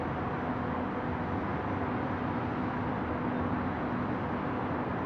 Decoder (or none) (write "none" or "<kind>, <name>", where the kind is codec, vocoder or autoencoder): none